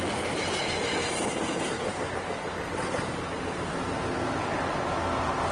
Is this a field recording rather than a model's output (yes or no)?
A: yes